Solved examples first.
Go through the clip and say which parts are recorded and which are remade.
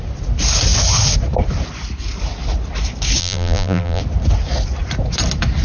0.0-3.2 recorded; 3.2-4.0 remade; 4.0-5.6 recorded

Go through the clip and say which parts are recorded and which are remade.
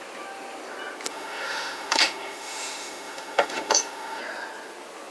0.0-1.1 recorded; 1.1-4.2 remade; 4.2-5.1 recorded